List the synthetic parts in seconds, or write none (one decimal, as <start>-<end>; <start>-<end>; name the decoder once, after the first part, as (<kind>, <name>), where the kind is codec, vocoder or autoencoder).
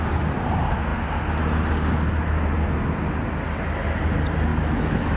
4.5-5.2 (autoencoder, DAC-VAE)